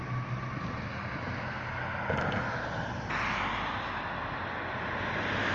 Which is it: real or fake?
real